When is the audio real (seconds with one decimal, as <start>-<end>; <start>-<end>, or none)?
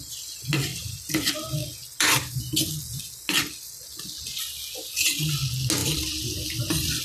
0.0-0.7; 1.3-5.8